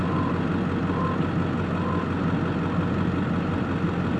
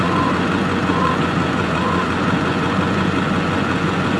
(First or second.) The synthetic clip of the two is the second